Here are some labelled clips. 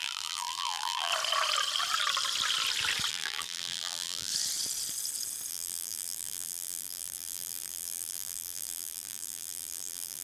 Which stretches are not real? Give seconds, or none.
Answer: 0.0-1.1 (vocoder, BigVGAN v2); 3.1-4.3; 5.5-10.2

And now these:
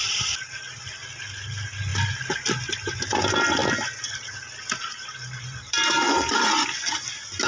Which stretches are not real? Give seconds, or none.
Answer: 3.6-6.3 (vocoder, BigVGAN v2)

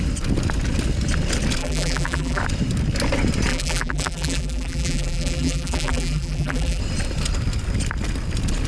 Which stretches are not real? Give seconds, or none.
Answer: 1.6-2.4 (vocoder, BigVGAN v2); 3.5-6.8